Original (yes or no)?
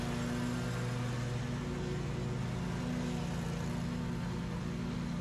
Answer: yes